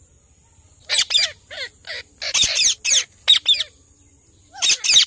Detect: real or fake real